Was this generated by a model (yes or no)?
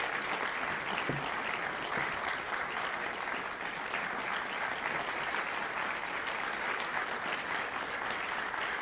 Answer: no